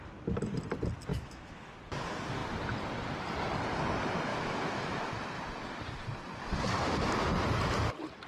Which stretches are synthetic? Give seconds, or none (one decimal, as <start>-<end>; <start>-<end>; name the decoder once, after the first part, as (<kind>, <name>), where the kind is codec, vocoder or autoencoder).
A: 1.1-1.8 (autoencoder, DAC-VAE); 4.3-5.1